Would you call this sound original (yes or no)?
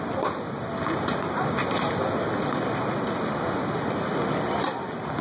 yes